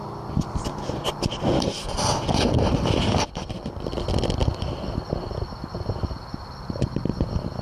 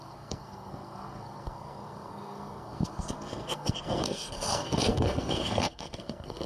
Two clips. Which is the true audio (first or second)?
first